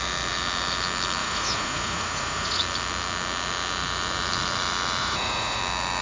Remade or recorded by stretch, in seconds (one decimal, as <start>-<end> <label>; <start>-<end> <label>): 0.0-1.2 recorded; 1.2-2.6 remade; 2.6-5.0 recorded; 5.0-5.6 remade; 5.6-6.0 recorded